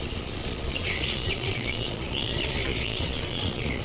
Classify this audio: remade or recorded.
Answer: remade